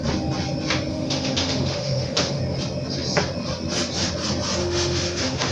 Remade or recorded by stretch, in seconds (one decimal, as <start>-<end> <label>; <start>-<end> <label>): 0.0-0.9 recorded; 0.9-2.4 remade; 2.4-4.6 recorded; 4.6-5.5 remade